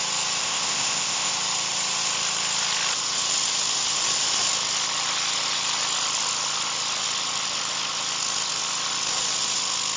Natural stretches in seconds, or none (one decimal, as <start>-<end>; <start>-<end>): 0.0-0.4; 1.3-10.0